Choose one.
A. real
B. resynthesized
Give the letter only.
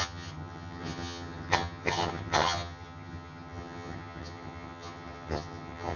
B